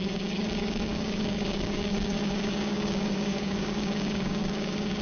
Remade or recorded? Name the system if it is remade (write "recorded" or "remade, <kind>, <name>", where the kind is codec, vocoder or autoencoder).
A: remade, codec, DAC